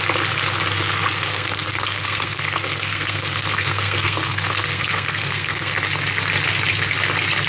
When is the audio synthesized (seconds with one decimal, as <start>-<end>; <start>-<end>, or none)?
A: 1.3-5.8